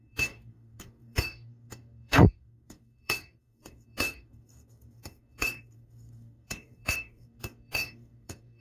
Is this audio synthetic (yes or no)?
yes